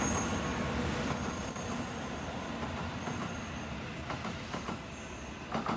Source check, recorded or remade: recorded